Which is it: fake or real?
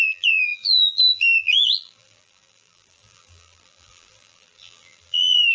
fake